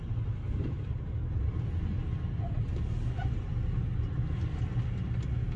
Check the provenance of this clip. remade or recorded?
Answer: recorded